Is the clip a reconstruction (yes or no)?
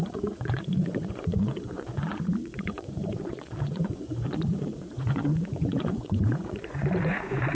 yes